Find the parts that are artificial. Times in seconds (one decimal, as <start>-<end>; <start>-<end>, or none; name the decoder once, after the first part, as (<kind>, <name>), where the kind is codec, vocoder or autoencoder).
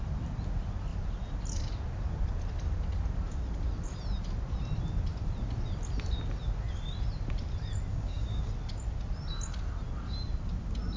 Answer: 7.9-8.5 (codec, DAC)